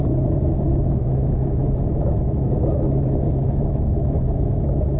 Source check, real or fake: fake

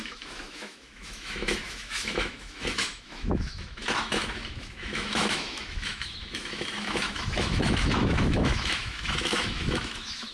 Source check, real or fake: fake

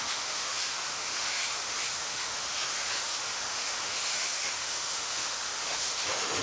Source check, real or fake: fake